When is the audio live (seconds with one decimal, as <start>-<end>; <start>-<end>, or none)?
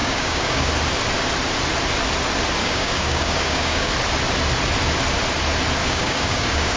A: 0.7-2.6; 3.9-5.8